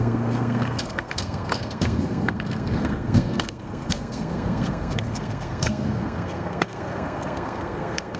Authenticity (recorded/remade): remade